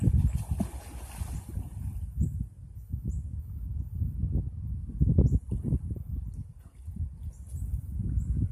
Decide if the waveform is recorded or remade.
recorded